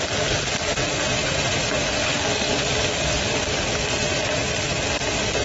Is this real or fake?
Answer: real